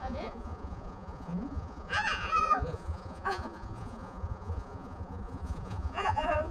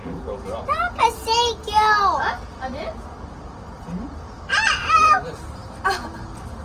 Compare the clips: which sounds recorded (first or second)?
second